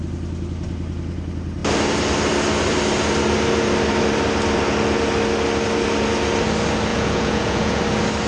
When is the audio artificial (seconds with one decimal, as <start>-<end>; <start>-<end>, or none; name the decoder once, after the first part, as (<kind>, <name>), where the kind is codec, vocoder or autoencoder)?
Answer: 6.9-7.8 (vocoder, Vocos)